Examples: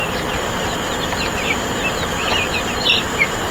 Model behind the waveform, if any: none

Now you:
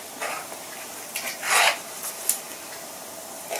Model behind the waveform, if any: none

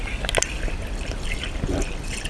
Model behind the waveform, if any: none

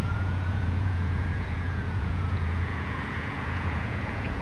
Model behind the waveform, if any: vocoder, Vocos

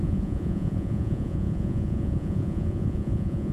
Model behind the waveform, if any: vocoder, Vocos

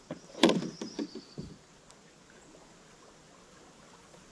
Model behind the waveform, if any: none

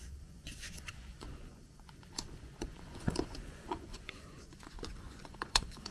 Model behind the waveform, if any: vocoder, Vocos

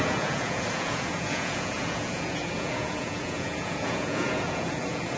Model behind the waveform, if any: vocoder, Vocos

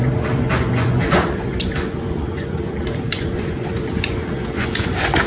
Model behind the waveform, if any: vocoder, Vocos